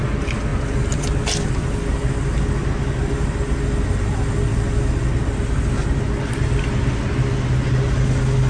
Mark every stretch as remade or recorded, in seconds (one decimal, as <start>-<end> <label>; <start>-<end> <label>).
0.0-8.5 recorded